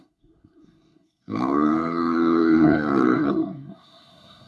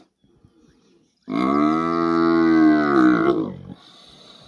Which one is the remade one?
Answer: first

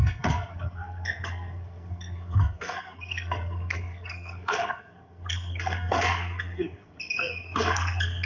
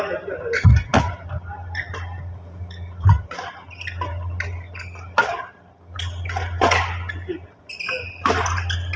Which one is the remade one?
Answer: first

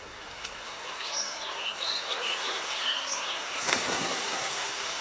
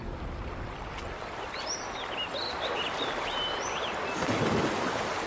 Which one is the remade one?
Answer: first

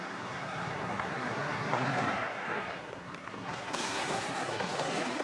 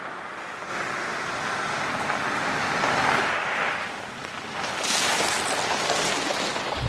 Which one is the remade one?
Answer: first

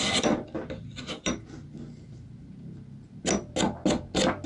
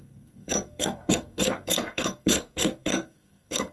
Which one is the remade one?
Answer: second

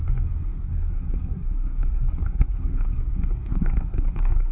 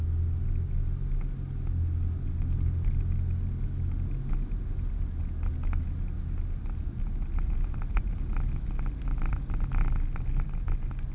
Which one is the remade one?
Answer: first